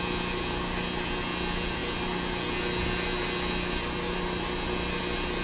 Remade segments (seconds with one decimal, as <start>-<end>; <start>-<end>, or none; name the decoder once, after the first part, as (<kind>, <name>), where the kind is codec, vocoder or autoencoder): none